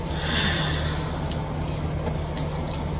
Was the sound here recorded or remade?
recorded